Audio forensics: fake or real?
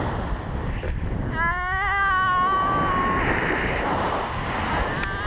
real